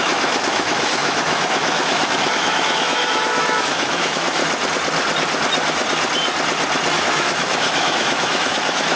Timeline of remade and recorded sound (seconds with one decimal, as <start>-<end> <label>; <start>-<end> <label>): 0.0-4.4 remade; 4.4-7.0 recorded; 7.0-9.0 remade